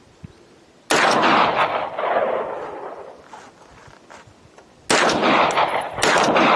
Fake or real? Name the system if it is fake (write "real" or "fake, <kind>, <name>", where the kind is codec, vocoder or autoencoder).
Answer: real